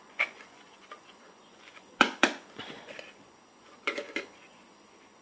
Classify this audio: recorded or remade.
remade